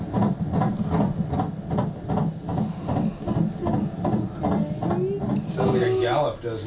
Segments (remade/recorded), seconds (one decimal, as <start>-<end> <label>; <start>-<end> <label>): 0.0-6.7 recorded